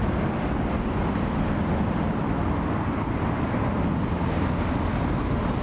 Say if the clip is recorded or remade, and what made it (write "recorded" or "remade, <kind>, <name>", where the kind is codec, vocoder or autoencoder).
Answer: remade, vocoder, BigVGAN v2